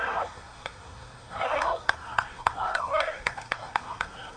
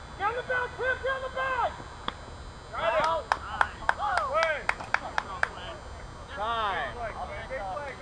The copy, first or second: first